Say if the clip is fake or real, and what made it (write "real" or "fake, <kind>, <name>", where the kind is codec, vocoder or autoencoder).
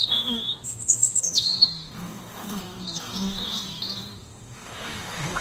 fake, codec, DAC